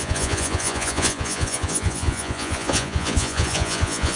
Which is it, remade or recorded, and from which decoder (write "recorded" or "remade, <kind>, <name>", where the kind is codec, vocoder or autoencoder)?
remade, vocoder, Vocos